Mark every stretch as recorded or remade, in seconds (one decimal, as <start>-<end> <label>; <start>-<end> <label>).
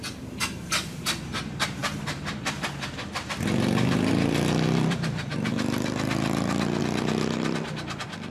0.0-5.5 remade; 5.5-6.8 recorded; 6.8-8.3 remade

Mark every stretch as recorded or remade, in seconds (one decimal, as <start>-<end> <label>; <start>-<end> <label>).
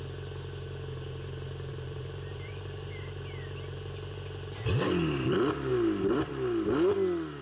0.0-1.7 recorded; 1.7-2.9 remade; 2.9-5.7 recorded; 5.7-6.3 remade; 6.3-7.4 recorded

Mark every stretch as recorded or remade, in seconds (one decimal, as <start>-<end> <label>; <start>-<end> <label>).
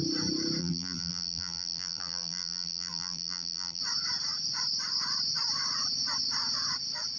0.0-0.6 recorded; 0.6-3.8 remade; 3.8-7.2 recorded